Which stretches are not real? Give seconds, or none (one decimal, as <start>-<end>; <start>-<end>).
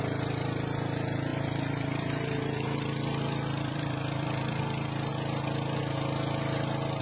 1.3-4.6